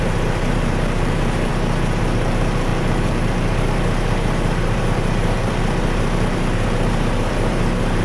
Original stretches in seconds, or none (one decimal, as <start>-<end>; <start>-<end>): 1.5-2.0